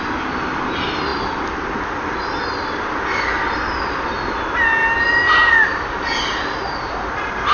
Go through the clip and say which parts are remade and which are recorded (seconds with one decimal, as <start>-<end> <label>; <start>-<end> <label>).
0.0-7.5 recorded